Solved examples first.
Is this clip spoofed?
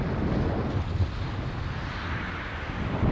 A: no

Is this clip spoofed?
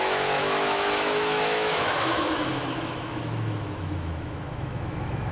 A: yes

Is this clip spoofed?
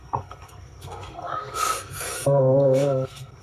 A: yes